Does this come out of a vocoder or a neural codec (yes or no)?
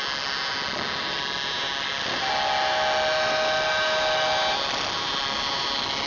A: no